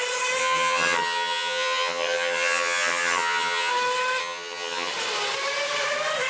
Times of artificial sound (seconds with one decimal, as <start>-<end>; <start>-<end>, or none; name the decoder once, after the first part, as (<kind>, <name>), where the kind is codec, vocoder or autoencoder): 0.4-3.7 (vocoder, HiFi-GAN); 4.2-4.9